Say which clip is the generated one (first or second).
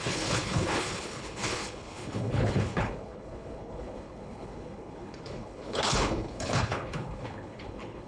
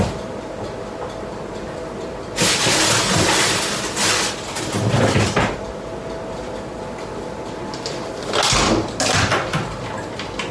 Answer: first